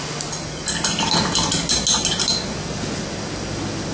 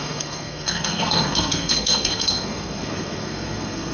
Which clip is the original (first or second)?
first